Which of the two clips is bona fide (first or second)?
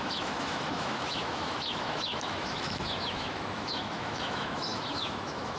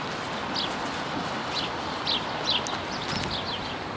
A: second